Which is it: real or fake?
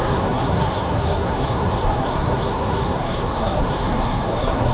fake